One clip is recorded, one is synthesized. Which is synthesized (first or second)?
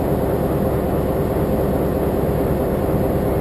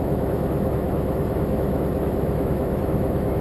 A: second